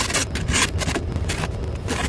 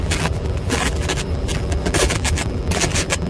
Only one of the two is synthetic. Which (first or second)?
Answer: second